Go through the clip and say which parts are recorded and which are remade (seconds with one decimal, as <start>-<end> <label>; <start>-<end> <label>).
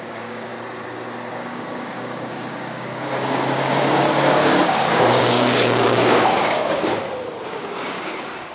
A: 0.0-0.5 remade; 0.5-1.3 recorded; 1.3-6.9 remade; 6.9-7.5 recorded; 7.5-8.5 remade